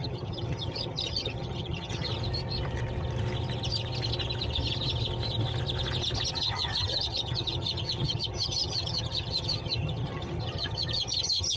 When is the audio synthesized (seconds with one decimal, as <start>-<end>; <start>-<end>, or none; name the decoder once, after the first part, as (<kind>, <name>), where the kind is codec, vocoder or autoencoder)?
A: 0.0-2.1 (vocoder, HiFi-GAN); 6.3-11.6